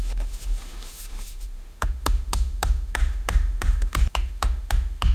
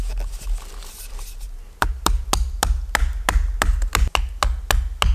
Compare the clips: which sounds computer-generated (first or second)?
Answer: first